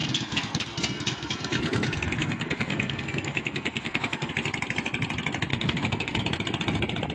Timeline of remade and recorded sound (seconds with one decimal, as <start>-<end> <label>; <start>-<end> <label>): 0.0-4.3 remade; 4.3-5.5 recorded; 5.5-6.2 remade; 6.2-7.1 recorded